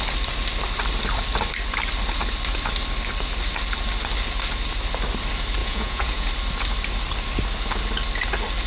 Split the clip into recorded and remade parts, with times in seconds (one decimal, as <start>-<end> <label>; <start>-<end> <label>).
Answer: 0.0-5.6 recorded; 5.6-6.3 remade; 6.3-8.7 recorded